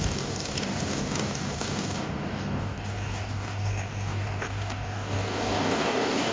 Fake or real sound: fake